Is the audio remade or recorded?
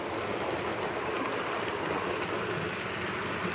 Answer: recorded